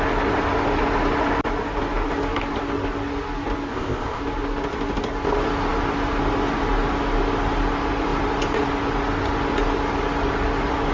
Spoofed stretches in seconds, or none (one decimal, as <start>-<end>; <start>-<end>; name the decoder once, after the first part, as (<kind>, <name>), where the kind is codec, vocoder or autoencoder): 3.7-4.2 (codec, ZipCodec)